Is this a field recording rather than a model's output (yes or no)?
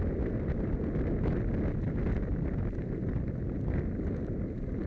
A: yes